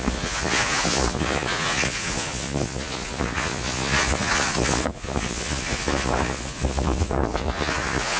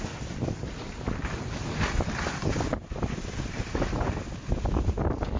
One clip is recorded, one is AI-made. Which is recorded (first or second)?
second